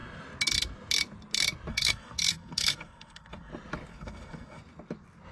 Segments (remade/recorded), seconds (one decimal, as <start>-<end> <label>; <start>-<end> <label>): 0.0-1.7 recorded; 1.7-3.5 remade; 3.5-3.9 recorded; 3.9-4.6 remade; 4.6-5.3 recorded